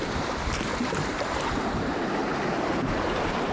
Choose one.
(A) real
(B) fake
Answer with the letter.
B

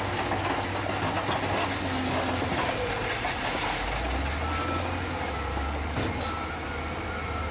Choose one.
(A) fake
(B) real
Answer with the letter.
B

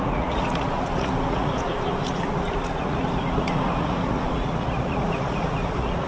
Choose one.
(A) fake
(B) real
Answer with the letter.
A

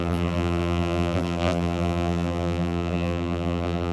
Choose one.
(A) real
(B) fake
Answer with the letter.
B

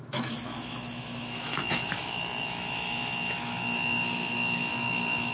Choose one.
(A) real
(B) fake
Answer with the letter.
B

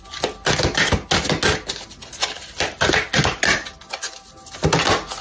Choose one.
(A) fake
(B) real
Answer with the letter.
B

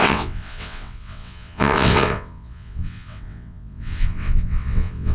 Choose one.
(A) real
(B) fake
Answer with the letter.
B